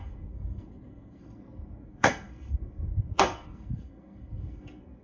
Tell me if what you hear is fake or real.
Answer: fake